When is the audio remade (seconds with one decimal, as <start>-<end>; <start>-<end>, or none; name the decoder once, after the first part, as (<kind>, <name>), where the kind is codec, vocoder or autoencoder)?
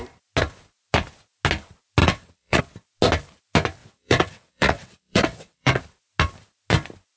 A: 2.0-2.6 (vocoder, WaveNeXt); 3.8-5.8